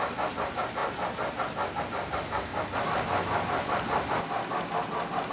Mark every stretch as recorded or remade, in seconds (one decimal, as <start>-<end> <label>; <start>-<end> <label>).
0.0-0.8 remade; 0.8-1.8 recorded; 1.8-5.3 remade